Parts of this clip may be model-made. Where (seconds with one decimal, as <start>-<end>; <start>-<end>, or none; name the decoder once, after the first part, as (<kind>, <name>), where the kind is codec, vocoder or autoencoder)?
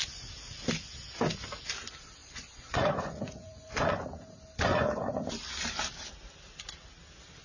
2.2-3.9 (vocoder, Vocos); 4.7-5.3